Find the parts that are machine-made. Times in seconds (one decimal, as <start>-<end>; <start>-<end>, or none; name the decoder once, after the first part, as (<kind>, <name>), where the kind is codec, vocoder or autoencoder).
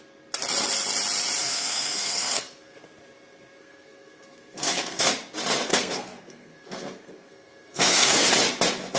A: 1.4-2.8 (codec, SNAC); 3.6-5.1; 5.7-8.3